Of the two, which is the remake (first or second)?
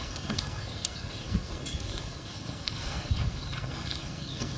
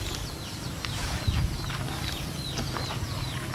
first